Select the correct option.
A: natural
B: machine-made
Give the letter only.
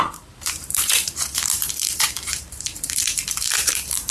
B